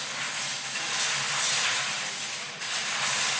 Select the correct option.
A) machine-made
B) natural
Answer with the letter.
B